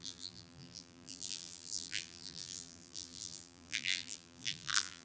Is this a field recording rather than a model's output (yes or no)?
no